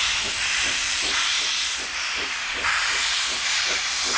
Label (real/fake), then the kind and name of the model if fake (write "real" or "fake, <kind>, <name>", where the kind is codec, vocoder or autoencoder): fake, vocoder, BigVGAN v2